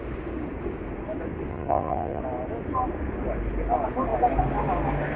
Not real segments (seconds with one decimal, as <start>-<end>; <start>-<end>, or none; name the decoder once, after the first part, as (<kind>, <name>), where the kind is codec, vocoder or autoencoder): 1.5-2.2 (vocoder, HiFi-GAN)